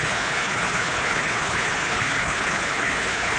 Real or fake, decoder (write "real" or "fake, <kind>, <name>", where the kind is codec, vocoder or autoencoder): fake, codec, HILCodec